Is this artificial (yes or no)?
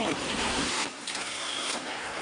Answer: yes